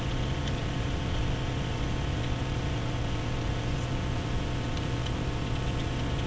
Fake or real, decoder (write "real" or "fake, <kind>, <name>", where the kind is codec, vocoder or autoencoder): fake, vocoder, Vocos